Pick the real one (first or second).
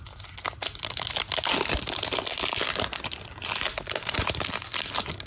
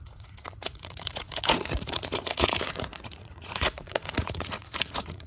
first